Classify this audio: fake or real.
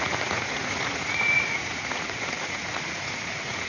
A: fake